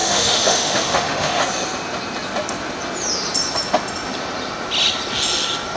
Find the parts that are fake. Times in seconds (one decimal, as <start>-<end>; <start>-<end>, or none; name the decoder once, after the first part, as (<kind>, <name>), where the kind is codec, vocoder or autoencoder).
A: 0.0-1.4 (autoencoder, DAC-VAE)